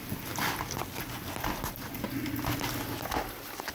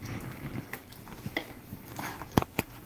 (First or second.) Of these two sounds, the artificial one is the second